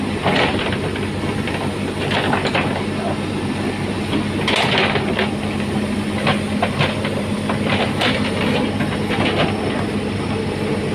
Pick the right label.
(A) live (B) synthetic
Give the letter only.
A